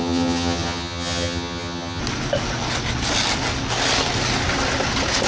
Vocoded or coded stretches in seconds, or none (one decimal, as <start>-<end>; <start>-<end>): 0.0-2.0